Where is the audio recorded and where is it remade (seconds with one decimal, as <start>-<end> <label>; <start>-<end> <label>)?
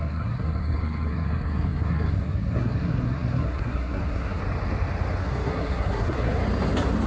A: 0.0-4.4 remade; 4.4-5.2 recorded; 5.2-6.4 remade; 6.4-7.1 recorded